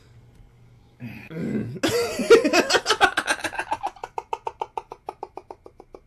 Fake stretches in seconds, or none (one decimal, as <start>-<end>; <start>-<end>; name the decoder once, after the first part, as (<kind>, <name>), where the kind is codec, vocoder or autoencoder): 0.5-1.8 (codec, DAC)